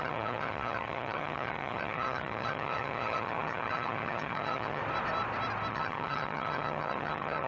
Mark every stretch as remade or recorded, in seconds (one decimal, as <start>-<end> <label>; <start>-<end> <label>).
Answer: 0.0-4.8 remade; 4.8-5.7 recorded; 5.7-7.5 remade